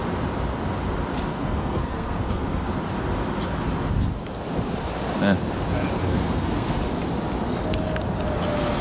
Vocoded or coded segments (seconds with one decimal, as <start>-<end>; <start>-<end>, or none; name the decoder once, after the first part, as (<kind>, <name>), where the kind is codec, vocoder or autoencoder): 1.3-2.7 (codec, SNAC); 6.0-6.8